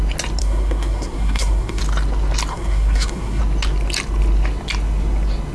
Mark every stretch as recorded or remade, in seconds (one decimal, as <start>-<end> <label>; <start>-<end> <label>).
0.0-0.4 recorded; 0.4-1.8 remade; 1.8-2.5 recorded; 2.5-3.4 remade; 3.4-5.5 recorded